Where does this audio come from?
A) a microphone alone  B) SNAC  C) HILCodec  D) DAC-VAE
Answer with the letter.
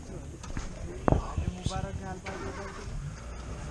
A